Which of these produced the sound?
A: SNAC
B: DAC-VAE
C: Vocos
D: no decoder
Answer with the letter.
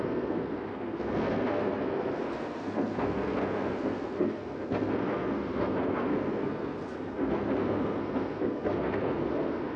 A